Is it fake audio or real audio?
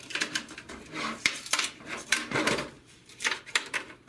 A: fake